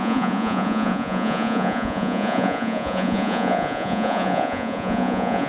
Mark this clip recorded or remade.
remade